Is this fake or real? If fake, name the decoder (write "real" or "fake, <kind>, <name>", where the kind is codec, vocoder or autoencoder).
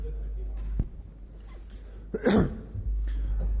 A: real